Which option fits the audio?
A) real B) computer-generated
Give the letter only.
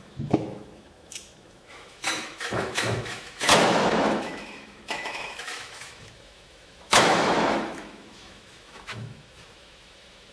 B